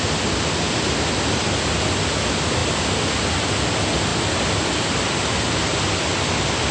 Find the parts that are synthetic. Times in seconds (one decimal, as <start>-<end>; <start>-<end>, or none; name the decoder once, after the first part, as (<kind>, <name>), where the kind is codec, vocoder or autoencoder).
none